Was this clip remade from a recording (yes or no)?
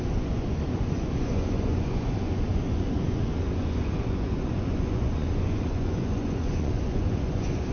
yes